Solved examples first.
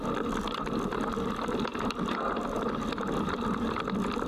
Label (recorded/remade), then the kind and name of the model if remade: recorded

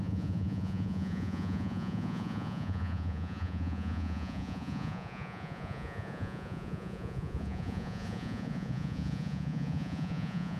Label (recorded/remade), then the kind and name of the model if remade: remade, vocoder, Vocos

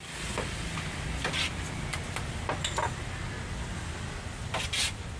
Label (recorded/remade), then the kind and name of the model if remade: recorded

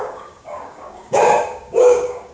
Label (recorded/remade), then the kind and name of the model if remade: remade, codec, DAC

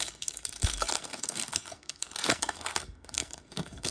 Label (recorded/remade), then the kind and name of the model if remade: remade, codec, SNAC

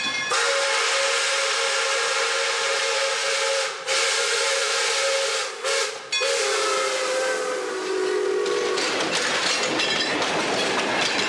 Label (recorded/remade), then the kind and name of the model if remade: recorded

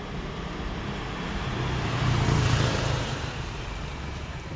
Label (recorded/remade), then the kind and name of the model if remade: remade, vocoder, BigVGAN v2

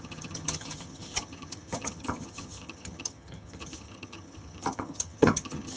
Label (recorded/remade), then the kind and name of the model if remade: remade, vocoder, HiFi-GAN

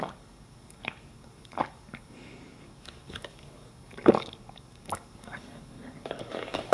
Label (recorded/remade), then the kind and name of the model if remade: remade, codec, DAC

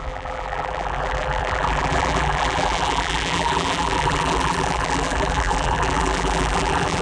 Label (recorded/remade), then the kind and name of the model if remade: remade, vocoder, BigVGAN v2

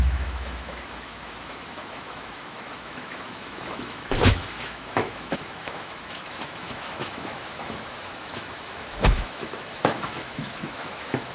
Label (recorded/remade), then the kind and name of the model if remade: remade, autoencoder, DAC-VAE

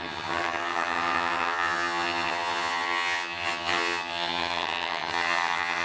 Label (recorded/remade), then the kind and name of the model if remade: remade, vocoder, HiFi-GAN